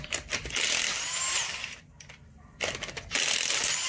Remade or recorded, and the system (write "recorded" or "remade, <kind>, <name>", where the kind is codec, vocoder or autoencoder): recorded